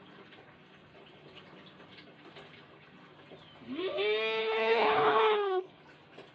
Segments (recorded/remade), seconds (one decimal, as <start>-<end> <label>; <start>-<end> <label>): 0.0-4.4 recorded; 4.4-5.8 remade; 5.8-6.3 recorded